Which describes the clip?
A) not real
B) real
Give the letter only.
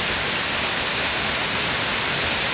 B